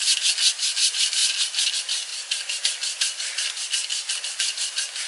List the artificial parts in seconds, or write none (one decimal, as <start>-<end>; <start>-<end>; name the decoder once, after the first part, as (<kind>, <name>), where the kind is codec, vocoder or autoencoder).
none